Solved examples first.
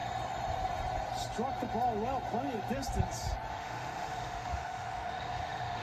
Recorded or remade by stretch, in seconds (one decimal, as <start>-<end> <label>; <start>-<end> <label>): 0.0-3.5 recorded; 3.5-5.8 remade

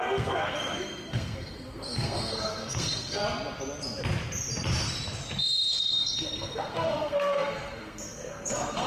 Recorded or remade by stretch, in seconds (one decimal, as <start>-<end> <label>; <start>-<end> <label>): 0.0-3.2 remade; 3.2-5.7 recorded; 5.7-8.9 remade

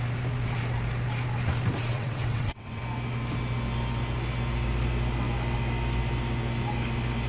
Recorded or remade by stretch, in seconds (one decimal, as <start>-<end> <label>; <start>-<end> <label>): 0.0-1.9 recorded; 1.9-2.8 remade; 2.8-7.3 recorded

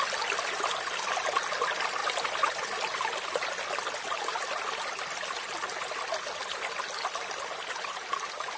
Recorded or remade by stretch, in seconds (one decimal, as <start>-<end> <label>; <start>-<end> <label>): 0.0-8.6 recorded

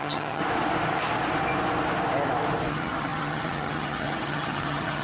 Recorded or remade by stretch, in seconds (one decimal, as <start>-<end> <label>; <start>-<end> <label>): 0.0-0.4 remade; 0.4-2.7 recorded; 2.7-5.0 remade

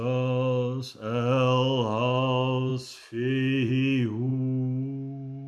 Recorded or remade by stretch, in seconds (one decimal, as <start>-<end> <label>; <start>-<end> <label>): 0.0-5.5 recorded

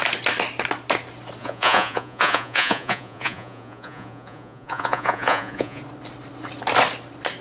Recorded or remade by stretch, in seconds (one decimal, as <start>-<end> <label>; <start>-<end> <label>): 0.0-1.4 recorded; 1.4-5.8 remade; 5.8-7.4 recorded

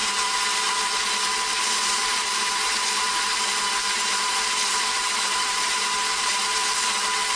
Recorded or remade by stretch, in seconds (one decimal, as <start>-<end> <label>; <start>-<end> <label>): 0.0-2.0 recorded; 2.0-6.4 remade; 6.4-7.4 recorded